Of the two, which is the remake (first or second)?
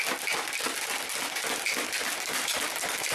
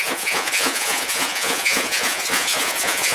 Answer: second